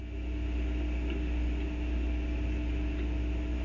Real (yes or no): yes